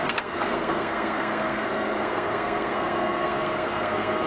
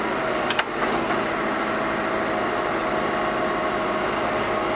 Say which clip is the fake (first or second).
first